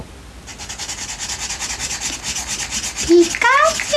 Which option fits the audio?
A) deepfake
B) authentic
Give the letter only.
B